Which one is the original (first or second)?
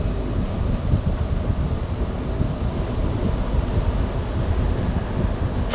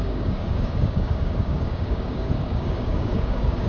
first